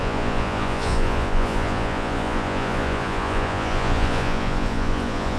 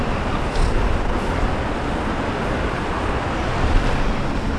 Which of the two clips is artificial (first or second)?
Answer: first